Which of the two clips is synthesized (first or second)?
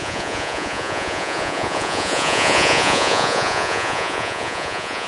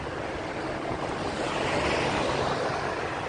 first